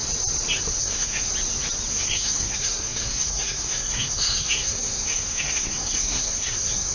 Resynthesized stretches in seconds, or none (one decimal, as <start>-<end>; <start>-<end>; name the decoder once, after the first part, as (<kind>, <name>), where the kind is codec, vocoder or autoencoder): 0.8-1.3 (codec, SNAC); 1.9-6.9